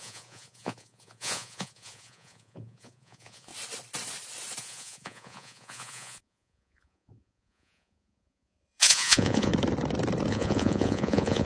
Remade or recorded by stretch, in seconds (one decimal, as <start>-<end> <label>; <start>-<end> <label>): 0.0-3.5 remade; 3.5-4.6 recorded; 4.6-9.5 remade; 9.5-10.3 recorded; 10.3-11.5 remade